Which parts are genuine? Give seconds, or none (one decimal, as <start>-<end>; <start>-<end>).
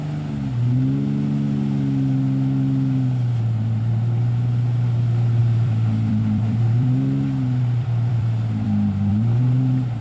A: 0.0-5.4; 9.1-10.0